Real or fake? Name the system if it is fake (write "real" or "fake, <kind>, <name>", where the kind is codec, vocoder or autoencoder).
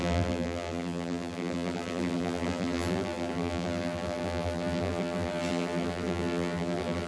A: fake, vocoder, BigVGAN v2